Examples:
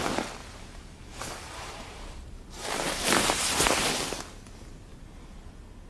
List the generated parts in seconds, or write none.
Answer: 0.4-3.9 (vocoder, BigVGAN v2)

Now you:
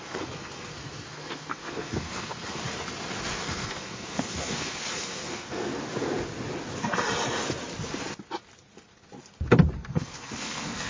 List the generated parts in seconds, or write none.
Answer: 0.0-2.6 (codec, SNAC); 3.3-5.7; 9.9-10.9